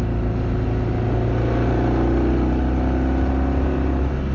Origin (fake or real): real